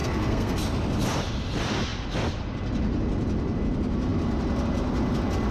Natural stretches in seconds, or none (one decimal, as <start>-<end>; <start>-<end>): 0.6-5.5